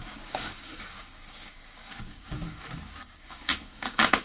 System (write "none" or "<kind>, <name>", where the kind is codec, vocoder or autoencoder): codec, DAC